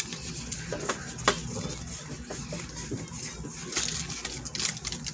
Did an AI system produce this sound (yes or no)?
no